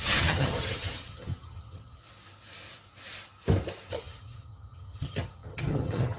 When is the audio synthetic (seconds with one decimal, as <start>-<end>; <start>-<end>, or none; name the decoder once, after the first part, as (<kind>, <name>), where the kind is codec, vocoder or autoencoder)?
0.0-2.0 (vocoder, HiFi-GAN); 3.9-6.2